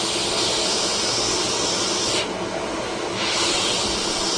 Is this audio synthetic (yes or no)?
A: yes